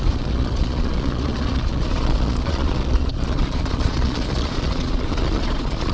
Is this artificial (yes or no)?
yes